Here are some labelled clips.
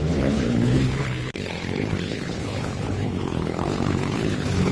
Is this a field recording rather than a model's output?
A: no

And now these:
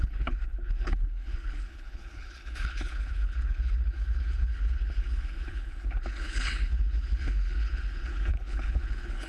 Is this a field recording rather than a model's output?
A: no